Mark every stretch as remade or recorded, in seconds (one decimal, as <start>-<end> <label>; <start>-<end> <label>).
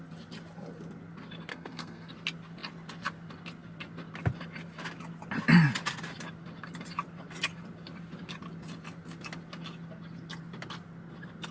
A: 0.0-1.5 recorded; 1.5-2.1 remade; 2.1-11.5 recorded